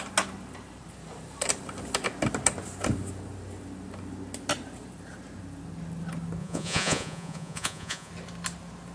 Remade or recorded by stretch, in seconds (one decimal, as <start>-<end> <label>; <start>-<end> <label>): 0.0-6.4 recorded; 6.4-8.1 remade; 8.1-8.9 recorded